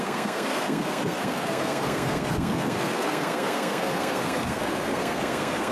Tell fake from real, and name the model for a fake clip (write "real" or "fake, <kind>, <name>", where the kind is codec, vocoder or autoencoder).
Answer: fake, codec, SNAC